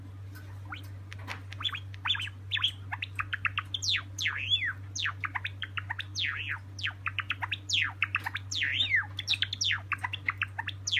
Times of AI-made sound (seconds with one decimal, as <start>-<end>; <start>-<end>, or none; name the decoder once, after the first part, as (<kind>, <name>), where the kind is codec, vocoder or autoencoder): none